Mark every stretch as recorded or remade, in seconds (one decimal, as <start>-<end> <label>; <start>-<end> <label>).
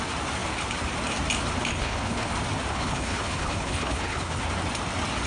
0.0-1.7 recorded; 1.7-2.3 remade; 2.3-2.7 recorded; 2.7-4.4 remade; 4.4-5.3 recorded